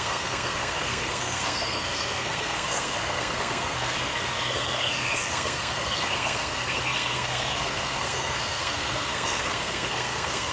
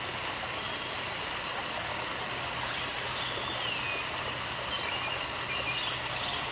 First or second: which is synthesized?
first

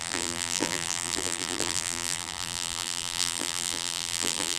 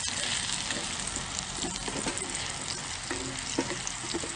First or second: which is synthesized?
first